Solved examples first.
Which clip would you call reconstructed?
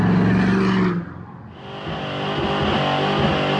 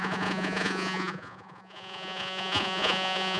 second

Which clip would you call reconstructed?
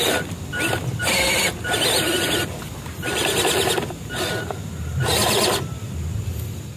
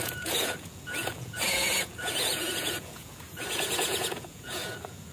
second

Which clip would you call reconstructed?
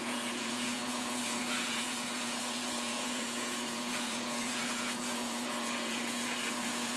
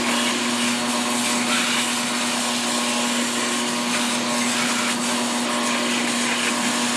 first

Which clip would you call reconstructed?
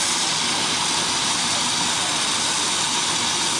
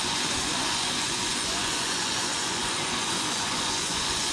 second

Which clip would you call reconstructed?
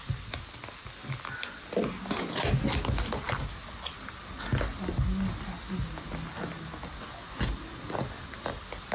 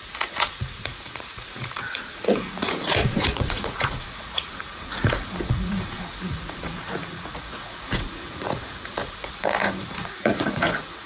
second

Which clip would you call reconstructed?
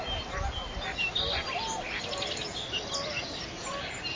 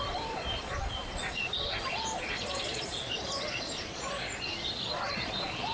second